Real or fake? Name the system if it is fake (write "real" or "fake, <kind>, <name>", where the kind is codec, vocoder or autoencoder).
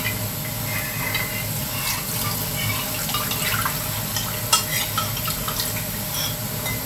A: real